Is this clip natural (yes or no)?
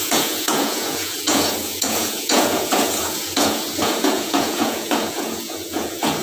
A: no